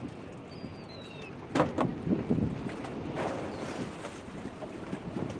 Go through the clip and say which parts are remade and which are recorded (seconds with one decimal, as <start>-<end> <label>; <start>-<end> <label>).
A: 0.0-0.7 recorded; 0.7-1.3 remade; 1.3-5.4 recorded